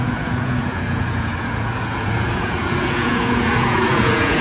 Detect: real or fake fake